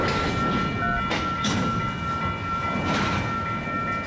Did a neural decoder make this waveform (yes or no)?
no